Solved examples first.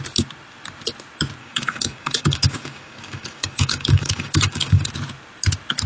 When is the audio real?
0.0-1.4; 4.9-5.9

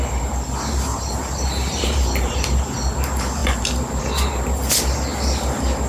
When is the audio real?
0.0-0.9; 2.3-5.9

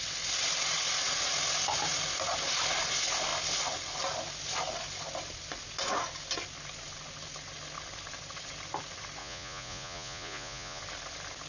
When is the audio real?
0.0-9.2; 10.8-11.5

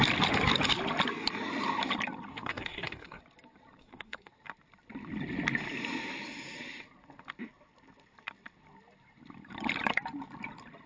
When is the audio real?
0.0-2.3; 3.2-3.8; 4.3-10.9